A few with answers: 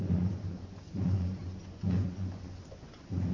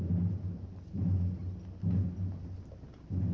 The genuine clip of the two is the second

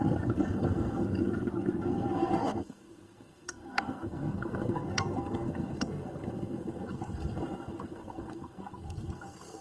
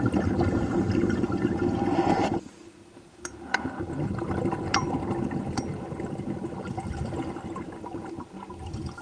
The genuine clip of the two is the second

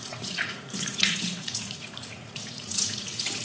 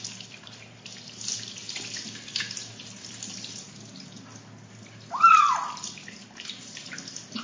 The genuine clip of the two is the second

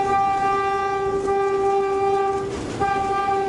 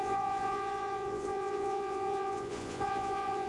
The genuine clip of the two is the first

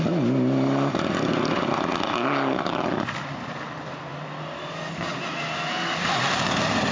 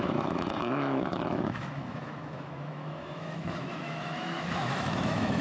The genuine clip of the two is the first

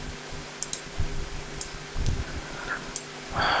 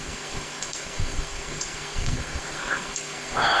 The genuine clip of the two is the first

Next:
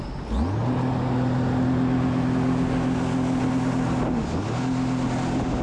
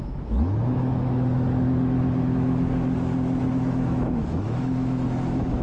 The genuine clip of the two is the first